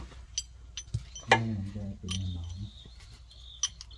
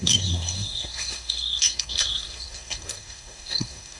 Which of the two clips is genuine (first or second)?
first